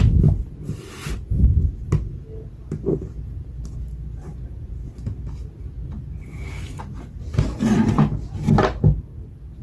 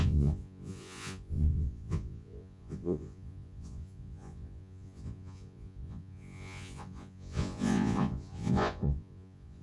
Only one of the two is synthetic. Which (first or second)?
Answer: second